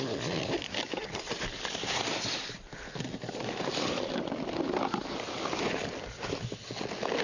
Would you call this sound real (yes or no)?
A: yes